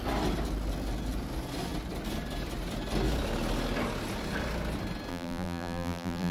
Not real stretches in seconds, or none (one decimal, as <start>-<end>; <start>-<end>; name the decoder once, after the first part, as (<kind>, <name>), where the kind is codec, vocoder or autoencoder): 5.1-6.3 (vocoder, BigVGAN v2)